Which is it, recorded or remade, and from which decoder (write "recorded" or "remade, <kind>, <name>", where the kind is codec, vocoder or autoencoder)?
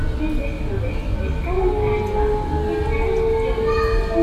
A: recorded